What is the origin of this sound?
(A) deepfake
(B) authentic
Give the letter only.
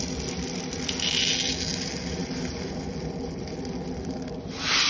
B